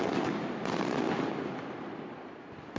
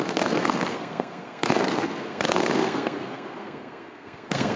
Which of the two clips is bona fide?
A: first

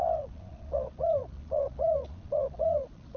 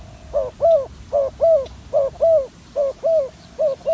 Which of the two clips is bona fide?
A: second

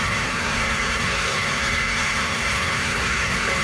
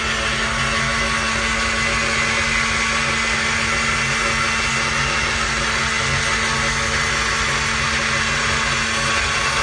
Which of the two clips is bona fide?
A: second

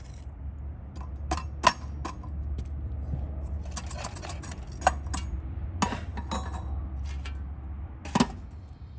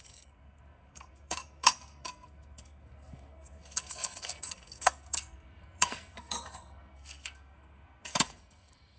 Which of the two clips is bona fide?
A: first